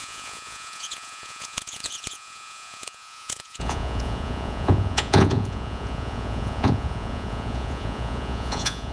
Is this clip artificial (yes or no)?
yes